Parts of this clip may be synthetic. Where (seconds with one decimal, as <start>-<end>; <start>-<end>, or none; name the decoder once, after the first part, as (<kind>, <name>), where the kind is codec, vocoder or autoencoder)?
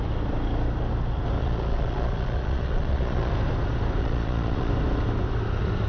1.4-3.3 (vocoder, Vocos); 4.0-4.7